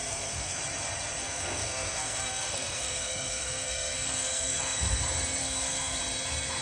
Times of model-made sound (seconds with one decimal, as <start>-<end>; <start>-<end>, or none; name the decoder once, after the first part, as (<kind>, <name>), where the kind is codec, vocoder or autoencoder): 0.0-0.6 (codec, SNAC); 1.2-5.0; 5.4-6.0